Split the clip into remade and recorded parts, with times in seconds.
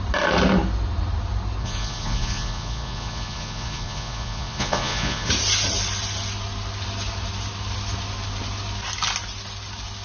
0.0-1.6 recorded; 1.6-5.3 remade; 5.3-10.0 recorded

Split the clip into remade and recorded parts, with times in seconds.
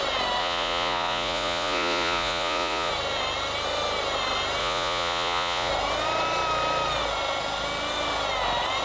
0.0-0.4 recorded; 0.4-2.9 remade; 2.9-4.6 recorded; 4.6-5.7 remade; 5.7-8.8 recorded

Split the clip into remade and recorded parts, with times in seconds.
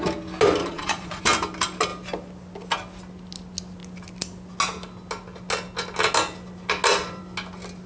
0.0-0.6 recorded; 0.6-1.2 remade; 1.2-7.9 recorded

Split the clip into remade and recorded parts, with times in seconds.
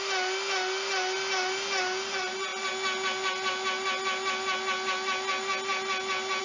0.0-6.4 recorded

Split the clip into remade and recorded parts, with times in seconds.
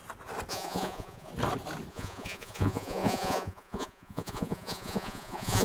0.0-0.5 recorded; 0.5-1.3 remade; 1.3-1.9 recorded; 1.9-5.6 remade